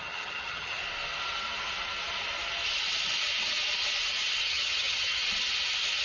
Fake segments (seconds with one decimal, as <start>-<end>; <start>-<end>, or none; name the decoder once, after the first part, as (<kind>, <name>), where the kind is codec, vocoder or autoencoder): 0.0-0.8 (vocoder, HiFi-GAN); 4.4-5.2